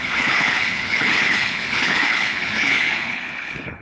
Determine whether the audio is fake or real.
fake